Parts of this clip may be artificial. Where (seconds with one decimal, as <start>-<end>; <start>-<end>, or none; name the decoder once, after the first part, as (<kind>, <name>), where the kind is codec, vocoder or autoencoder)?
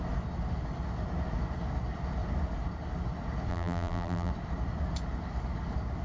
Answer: 3.5-4.3 (vocoder, BigVGAN v2)